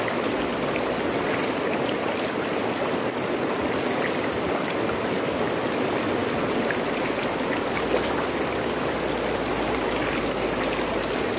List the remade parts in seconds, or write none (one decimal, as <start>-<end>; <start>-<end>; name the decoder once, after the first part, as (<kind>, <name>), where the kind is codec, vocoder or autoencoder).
none